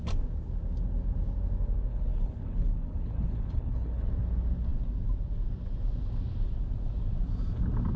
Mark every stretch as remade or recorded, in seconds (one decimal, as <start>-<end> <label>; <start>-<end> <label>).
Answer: 0.0-1.9 recorded; 1.9-4.1 remade; 4.1-8.0 recorded